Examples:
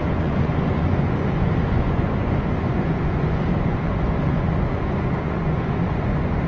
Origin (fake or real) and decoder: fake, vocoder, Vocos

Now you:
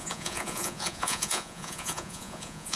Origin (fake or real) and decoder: fake, vocoder, Vocos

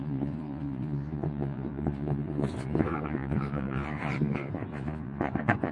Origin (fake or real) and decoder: fake, vocoder, Vocos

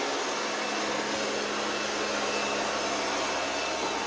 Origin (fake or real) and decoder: real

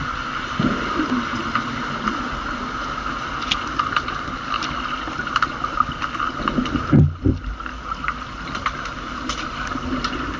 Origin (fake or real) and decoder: real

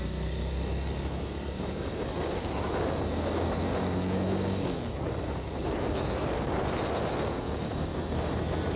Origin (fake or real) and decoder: real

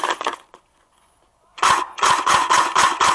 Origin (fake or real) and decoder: fake, vocoder, Vocos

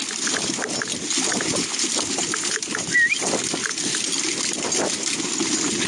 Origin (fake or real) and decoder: real